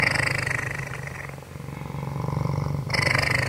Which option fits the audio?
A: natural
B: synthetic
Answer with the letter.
A